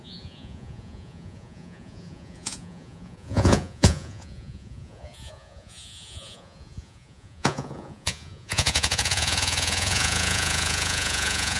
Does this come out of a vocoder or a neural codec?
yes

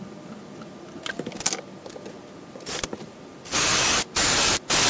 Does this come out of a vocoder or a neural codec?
no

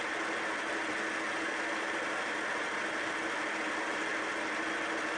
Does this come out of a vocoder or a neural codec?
no